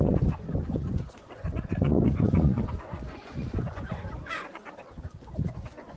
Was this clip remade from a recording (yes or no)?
yes